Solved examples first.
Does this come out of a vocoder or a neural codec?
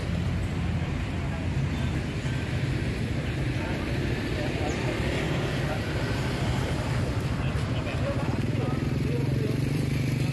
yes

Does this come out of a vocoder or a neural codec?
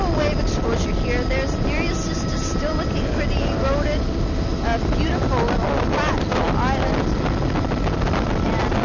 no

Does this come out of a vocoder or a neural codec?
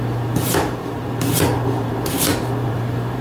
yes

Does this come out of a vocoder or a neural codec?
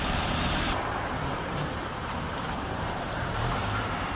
yes